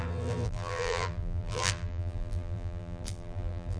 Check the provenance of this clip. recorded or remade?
remade